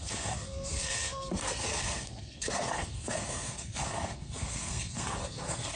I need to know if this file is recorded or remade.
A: remade